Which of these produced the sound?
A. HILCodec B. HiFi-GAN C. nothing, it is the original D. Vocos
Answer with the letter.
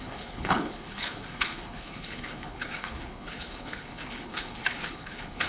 A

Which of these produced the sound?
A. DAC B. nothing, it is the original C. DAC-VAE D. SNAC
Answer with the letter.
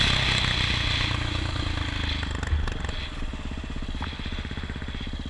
B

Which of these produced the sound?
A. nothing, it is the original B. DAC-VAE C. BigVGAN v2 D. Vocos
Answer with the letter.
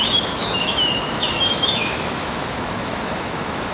B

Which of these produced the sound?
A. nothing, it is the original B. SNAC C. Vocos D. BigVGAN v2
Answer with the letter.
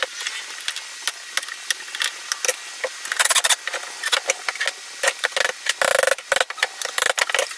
A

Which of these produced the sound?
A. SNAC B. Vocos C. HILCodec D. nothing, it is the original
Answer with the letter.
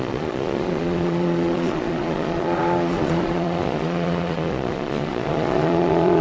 B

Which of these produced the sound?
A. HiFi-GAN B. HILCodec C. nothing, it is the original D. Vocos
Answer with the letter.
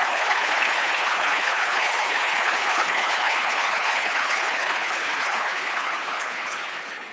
B